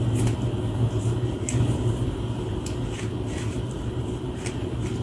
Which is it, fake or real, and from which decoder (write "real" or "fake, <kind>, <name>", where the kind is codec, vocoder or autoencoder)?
real